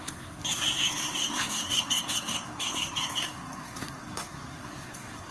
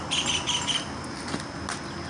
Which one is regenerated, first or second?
first